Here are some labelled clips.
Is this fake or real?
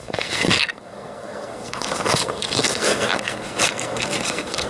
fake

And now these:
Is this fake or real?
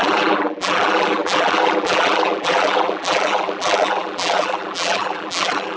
fake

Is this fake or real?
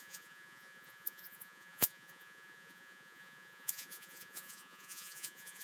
fake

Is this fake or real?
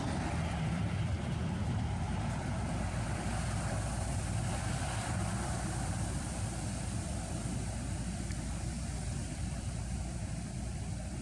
fake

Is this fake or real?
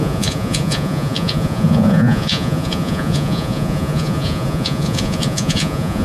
fake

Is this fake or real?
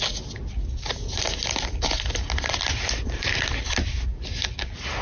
real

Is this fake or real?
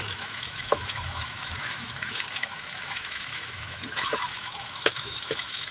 fake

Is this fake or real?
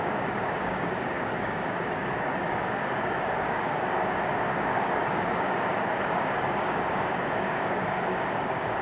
fake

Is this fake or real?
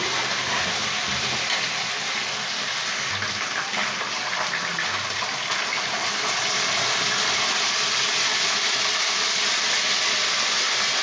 real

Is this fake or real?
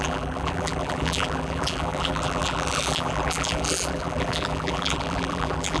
fake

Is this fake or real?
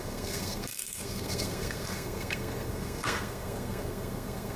fake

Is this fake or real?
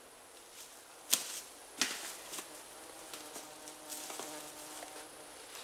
real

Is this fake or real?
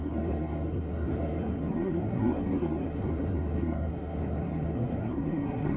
fake